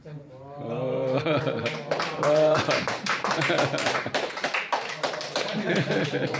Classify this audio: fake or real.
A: fake